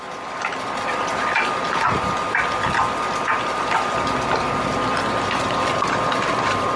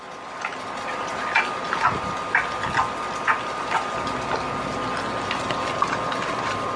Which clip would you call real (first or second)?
second